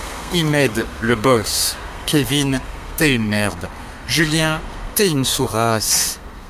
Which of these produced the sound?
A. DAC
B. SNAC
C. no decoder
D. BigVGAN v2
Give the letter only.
B